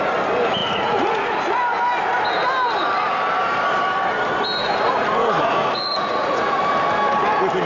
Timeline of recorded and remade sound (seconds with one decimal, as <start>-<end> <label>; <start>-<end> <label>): 0.0-0.6 recorded; 0.6-1.6 remade; 1.6-4.6 recorded; 4.6-6.6 remade; 6.6-7.7 recorded